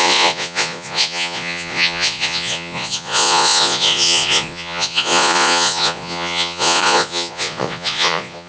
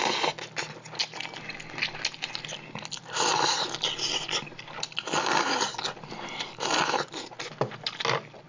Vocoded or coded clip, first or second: first